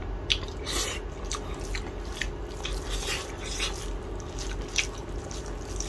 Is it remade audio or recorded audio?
recorded